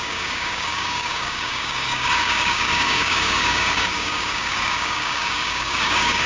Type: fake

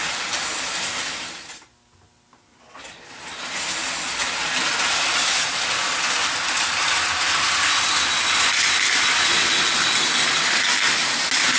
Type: real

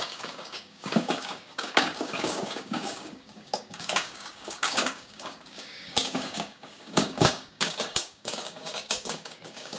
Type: fake